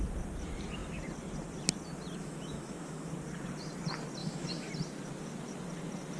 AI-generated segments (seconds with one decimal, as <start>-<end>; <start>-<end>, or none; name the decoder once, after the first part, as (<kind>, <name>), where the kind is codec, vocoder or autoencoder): 2.2-3.1 (autoencoder, DAC-VAE); 4.2-4.7